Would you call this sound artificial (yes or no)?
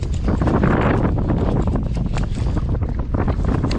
no